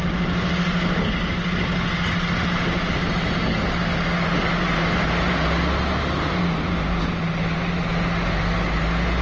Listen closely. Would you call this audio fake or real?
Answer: real